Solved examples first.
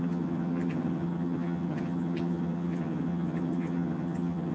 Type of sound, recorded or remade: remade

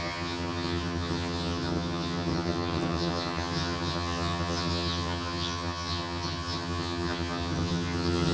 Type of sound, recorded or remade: remade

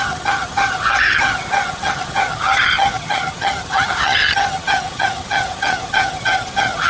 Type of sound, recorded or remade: remade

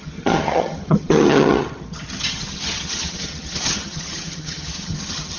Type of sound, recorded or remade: remade